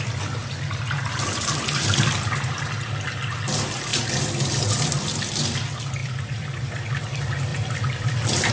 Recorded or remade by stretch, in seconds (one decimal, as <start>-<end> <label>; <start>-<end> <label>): 0.0-0.4 recorded; 0.4-2.5 remade; 2.5-6.0 recorded; 6.0-6.7 remade; 6.7-7.5 recorded; 7.5-8.5 remade